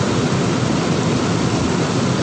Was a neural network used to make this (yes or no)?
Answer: no